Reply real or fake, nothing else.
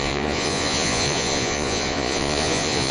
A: fake